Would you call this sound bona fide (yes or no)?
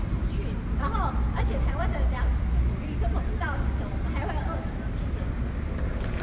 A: yes